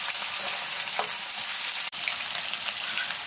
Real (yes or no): no